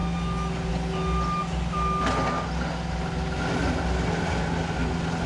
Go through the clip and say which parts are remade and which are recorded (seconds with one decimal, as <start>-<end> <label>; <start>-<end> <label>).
0.0-5.3 recorded